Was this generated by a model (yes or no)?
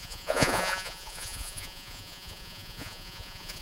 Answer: yes